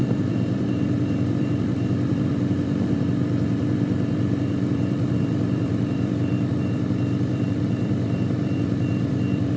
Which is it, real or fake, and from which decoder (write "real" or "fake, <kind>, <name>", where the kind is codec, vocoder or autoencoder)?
fake, vocoder, BigVGAN v2